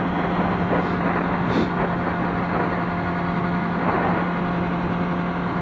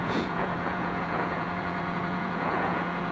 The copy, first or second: second